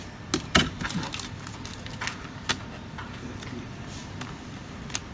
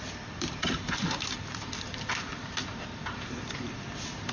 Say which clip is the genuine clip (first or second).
first